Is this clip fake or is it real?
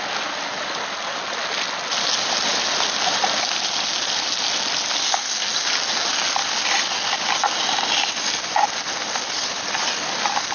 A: real